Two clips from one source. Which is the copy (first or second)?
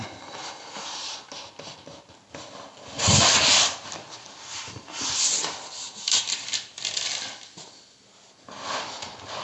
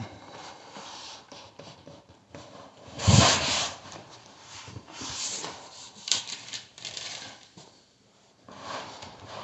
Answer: second